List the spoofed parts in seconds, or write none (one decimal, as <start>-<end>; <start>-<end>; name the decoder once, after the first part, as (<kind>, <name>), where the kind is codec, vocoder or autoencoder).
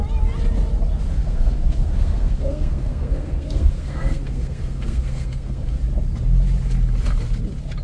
1.1-5.8 (codec, SNAC)